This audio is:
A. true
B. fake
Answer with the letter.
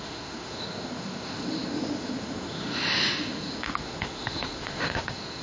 B